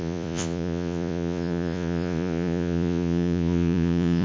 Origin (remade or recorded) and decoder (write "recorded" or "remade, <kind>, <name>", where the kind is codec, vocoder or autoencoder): remade, vocoder, Vocos